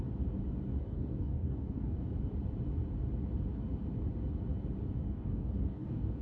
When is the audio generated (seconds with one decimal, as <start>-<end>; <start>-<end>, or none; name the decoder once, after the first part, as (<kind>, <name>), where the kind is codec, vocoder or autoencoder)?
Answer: 0.8-2.0 (codec, DAC); 5.0-6.2